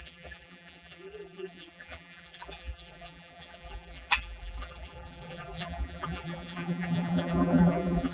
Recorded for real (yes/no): no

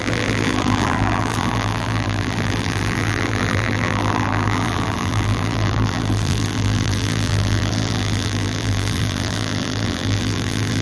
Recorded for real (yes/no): no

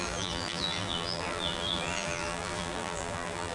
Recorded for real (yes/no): no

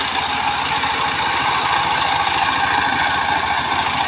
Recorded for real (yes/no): yes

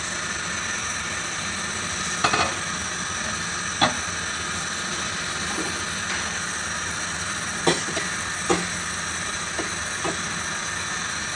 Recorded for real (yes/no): yes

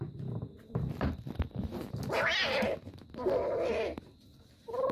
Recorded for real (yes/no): yes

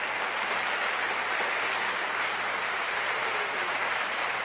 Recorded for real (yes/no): no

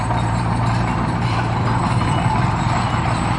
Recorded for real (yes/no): no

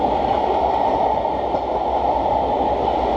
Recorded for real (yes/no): yes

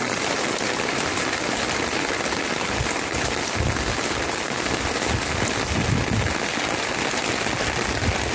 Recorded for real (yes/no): yes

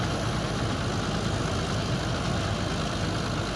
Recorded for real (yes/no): yes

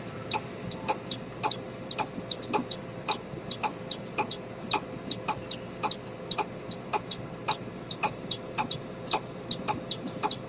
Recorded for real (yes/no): no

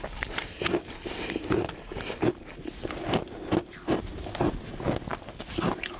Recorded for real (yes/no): yes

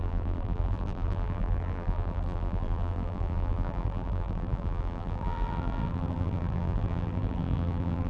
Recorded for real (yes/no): no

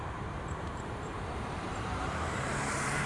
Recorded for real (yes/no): no